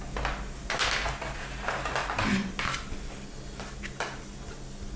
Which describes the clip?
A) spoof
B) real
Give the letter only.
B